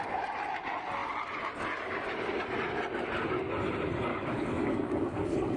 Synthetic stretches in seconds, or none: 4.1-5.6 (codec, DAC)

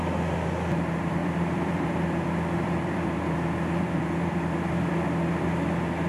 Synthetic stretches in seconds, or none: 1.2-4.9 (vocoder, BigVGAN v2)